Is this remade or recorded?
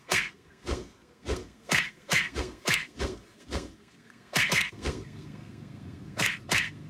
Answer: remade